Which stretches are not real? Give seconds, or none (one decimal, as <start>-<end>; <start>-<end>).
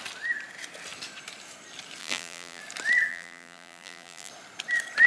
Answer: 2.0-2.6; 3.1-4.3